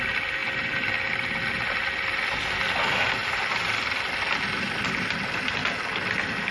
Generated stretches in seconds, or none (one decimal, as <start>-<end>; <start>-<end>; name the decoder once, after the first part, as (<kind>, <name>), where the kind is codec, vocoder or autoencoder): none